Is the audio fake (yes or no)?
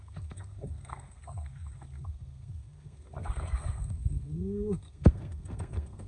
yes